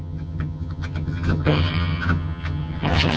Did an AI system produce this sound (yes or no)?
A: yes